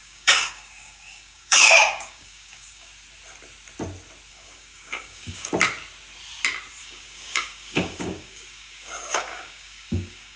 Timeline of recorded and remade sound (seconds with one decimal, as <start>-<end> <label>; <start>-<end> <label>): 0.0-2.9 remade; 2.9-4.3 recorded; 4.3-5.5 remade; 5.5-6.8 recorded; 6.8-10.4 remade